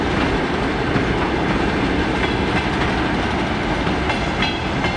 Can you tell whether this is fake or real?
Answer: real